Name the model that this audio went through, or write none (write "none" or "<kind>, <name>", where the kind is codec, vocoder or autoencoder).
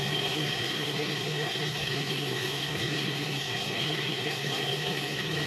codec, SNAC